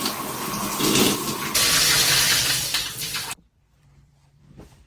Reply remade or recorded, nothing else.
remade